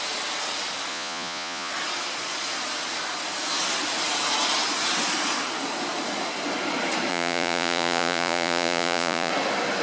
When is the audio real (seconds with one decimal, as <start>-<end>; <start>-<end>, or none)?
0.0-0.9; 1.7-7.1; 9.3-9.8